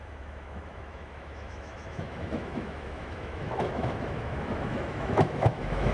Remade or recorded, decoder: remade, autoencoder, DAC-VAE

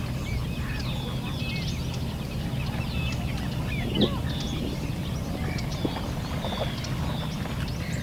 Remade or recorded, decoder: recorded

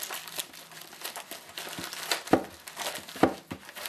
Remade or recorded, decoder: recorded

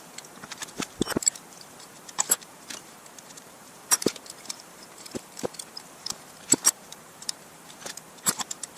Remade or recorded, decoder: remade, vocoder, BigVGAN v2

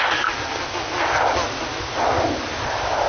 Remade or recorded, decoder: recorded